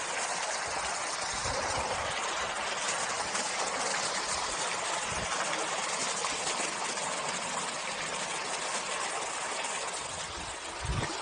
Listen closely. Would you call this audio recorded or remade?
recorded